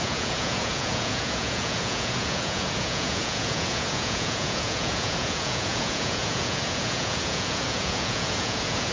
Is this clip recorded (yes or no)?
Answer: no